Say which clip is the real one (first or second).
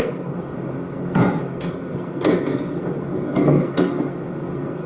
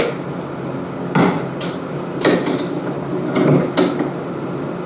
second